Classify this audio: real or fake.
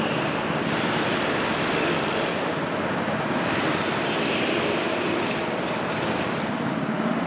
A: fake